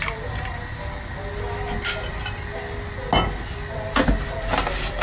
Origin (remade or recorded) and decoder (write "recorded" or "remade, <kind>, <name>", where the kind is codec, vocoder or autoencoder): recorded